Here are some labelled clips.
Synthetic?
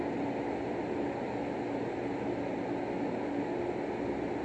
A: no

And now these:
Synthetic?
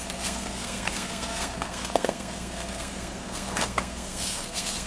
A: yes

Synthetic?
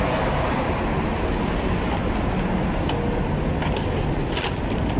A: no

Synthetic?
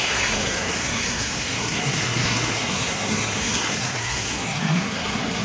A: yes